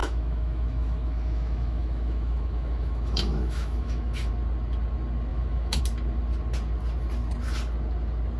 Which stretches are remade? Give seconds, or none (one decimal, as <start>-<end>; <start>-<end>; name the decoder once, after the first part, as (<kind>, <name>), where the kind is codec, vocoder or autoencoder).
0.0-4.3 (autoencoder, DAC-VAE); 5.3-5.8